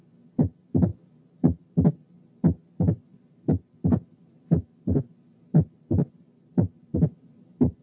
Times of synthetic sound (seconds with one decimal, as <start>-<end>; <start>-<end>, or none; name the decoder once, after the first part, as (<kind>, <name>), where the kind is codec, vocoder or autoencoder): 0.9-1.7 (vocoder, BigVGAN v2); 3.0-7.8